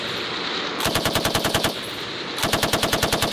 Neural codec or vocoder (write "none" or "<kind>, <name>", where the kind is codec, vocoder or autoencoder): none